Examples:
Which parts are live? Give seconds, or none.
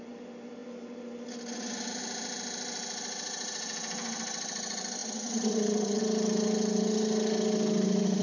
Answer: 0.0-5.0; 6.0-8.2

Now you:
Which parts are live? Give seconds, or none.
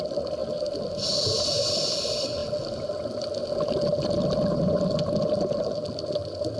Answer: 0.0-6.6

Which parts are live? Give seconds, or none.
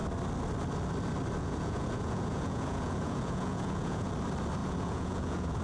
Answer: 0.0-1.4; 4.1-4.6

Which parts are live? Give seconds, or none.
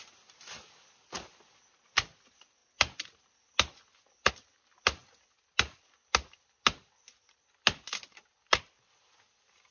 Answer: 0.0-9.7